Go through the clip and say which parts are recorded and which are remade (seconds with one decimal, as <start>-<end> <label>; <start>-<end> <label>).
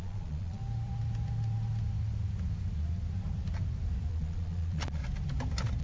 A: 0.0-0.6 remade; 0.6-4.1 recorded; 4.1-5.0 remade; 5.0-5.8 recorded